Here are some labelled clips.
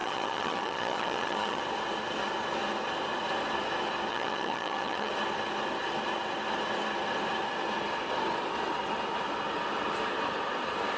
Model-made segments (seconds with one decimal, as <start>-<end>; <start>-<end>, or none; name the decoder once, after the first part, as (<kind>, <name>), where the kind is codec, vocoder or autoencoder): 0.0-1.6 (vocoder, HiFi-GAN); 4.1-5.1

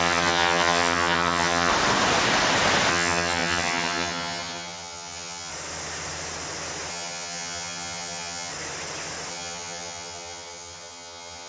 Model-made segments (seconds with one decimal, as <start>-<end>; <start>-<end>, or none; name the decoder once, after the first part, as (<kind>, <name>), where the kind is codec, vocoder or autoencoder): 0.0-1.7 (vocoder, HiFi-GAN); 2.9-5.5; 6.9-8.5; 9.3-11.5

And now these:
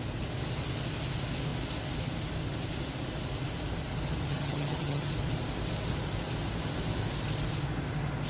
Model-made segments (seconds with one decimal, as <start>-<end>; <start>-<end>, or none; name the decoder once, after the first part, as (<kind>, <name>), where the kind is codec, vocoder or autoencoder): 4.3-5.1 (vocoder, HiFi-GAN)

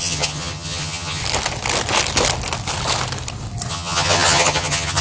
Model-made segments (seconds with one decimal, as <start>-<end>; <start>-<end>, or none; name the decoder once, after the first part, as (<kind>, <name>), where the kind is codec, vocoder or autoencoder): 0.0-1.2 (vocoder, HiFi-GAN); 3.7-5.0

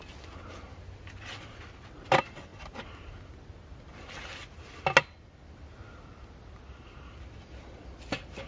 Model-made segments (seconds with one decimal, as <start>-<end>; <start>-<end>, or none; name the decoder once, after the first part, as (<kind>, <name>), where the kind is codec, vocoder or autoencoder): none

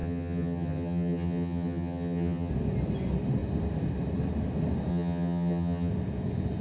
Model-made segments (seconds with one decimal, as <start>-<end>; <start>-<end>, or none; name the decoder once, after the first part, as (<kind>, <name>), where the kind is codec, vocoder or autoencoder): 0.0-2.5 (vocoder, HiFi-GAN); 4.9-5.9